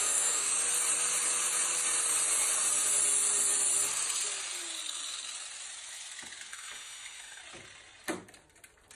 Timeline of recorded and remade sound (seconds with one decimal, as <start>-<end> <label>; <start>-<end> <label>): 0.0-0.5 remade; 0.5-6.5 recorded; 6.5-7.4 remade; 7.4-8.9 recorded